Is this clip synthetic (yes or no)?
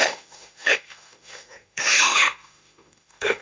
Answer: yes